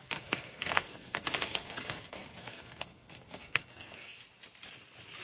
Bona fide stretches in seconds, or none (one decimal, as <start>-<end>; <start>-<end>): 4.2-5.2